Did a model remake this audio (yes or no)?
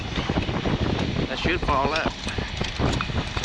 no